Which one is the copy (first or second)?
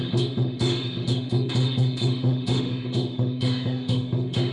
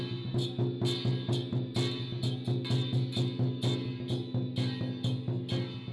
first